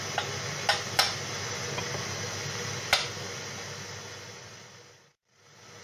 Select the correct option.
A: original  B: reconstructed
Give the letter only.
A